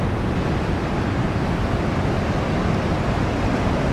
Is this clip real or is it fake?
real